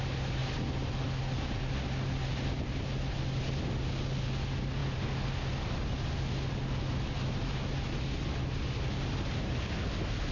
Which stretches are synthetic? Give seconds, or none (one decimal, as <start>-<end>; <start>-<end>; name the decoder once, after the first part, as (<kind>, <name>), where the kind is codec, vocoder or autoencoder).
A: none